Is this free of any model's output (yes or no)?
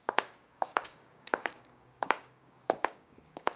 no